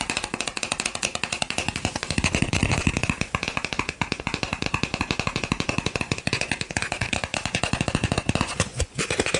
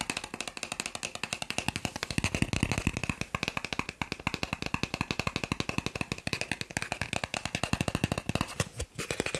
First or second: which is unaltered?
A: second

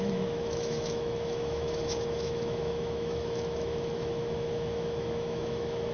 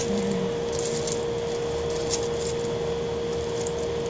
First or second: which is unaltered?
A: second